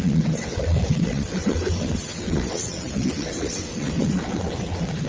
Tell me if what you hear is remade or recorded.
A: remade